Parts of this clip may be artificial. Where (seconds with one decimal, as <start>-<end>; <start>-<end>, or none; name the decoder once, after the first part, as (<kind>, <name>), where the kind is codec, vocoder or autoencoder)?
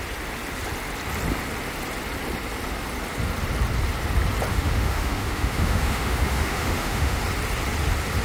4.5-7.2 (autoencoder, DAC-VAE)